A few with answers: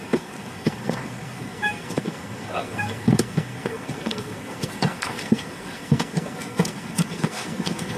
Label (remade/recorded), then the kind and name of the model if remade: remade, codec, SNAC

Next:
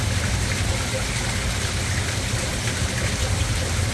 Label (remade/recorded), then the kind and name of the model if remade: recorded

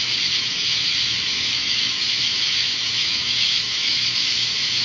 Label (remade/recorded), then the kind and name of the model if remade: remade, autoencoder, DAC-VAE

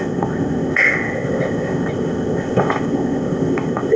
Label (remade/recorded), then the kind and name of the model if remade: remade, codec, ZipCodec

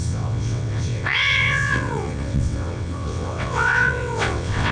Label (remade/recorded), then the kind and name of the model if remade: remade, vocoder, WaveNeXt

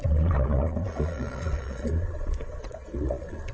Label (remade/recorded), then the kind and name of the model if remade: remade, vocoder, Vocos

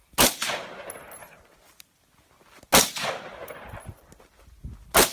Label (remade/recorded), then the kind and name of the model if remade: recorded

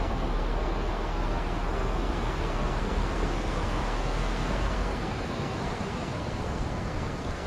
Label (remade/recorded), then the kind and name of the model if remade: remade, codec, SNAC